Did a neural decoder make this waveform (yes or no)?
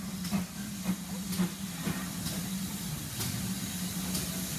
no